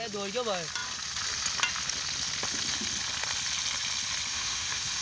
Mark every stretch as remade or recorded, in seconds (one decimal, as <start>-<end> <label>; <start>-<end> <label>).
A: 0.0-4.3 recorded; 4.3-5.0 remade